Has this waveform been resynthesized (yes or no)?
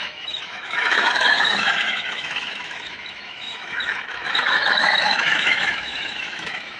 yes